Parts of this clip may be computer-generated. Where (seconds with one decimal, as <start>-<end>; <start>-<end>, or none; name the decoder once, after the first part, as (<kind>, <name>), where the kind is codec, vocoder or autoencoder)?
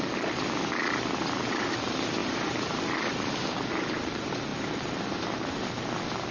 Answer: none